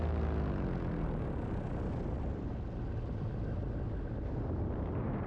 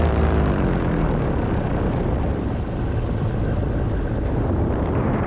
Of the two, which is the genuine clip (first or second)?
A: first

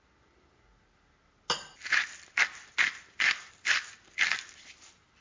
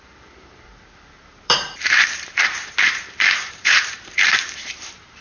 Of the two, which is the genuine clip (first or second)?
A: first